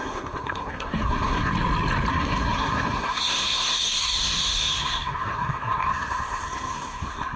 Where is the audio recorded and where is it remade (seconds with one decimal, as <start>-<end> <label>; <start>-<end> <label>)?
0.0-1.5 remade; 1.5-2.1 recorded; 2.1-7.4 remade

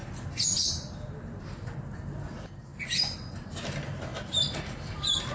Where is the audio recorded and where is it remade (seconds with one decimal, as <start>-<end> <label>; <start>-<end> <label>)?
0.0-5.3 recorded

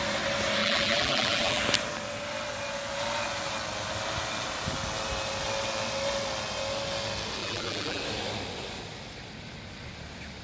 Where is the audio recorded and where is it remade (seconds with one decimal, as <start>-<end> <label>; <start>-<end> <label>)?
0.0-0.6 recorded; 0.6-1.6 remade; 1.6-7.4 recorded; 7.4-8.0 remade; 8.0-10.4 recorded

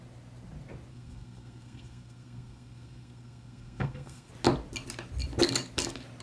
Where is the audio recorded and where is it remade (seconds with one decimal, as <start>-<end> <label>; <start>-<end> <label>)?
0.0-0.9 recorded; 0.9-4.3 remade; 4.3-6.2 recorded

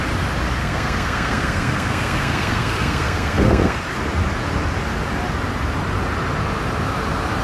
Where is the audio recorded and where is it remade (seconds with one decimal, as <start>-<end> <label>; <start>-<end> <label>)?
0.0-0.6 recorded; 0.6-3.8 remade; 3.8-7.4 recorded

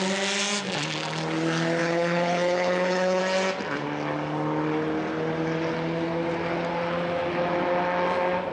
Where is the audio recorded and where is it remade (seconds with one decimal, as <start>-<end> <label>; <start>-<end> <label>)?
0.0-1.8 recorded; 1.8-3.2 remade; 3.2-8.5 recorded

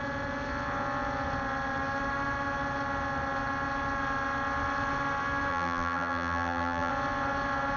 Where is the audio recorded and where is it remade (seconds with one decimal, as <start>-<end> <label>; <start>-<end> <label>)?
0.0-5.5 recorded; 5.5-6.9 remade; 6.9-7.8 recorded